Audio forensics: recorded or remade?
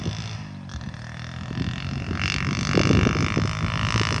recorded